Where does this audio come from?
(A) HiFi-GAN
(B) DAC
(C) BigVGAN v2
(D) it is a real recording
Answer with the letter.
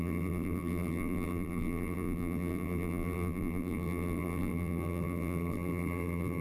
C